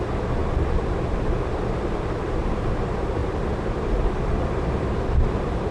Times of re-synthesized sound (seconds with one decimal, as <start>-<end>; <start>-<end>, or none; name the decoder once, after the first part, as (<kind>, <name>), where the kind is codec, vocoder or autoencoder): 0.0-3.2 (vocoder, BigVGAN v2); 3.9-5.7